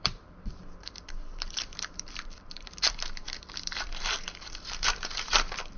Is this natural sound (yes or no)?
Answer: no